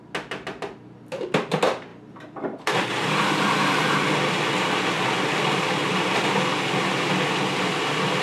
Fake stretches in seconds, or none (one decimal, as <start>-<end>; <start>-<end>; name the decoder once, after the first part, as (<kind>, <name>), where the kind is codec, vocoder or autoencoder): 1.9-4.5 (vocoder, BigVGAN v2); 5.3-6.7